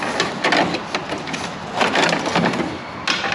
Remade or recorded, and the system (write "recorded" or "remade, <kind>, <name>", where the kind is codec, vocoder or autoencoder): recorded